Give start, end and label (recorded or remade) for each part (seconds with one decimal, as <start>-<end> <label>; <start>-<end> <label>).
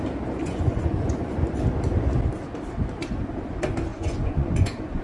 0.0-0.4 recorded; 0.4-1.3 remade; 1.3-3.9 recorded; 3.9-5.0 remade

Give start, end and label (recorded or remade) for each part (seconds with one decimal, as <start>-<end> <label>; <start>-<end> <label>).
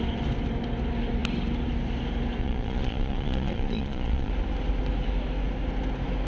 0.0-2.4 recorded; 2.4-4.3 remade; 4.3-6.3 recorded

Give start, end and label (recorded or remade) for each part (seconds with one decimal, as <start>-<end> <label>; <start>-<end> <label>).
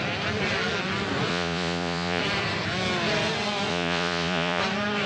0.0-1.3 recorded; 1.3-2.2 remade; 2.2-3.7 recorded; 3.7-4.6 remade; 4.6-5.1 recorded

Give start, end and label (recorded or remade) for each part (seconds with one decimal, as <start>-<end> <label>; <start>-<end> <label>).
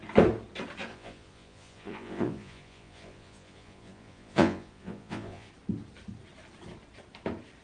0.0-0.9 recorded; 0.9-5.5 remade; 5.5-7.6 recorded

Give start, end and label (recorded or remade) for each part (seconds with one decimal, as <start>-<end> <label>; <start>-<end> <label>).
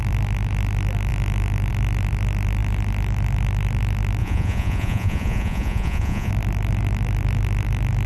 0.0-4.2 recorded; 4.2-6.3 remade; 6.3-8.1 recorded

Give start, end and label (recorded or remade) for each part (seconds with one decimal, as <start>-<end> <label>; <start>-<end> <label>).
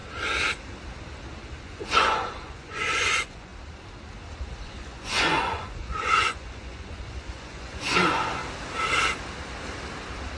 0.0-1.6 recorded; 1.6-3.5 remade; 3.5-4.6 recorded; 4.6-8.4 remade; 8.4-10.4 recorded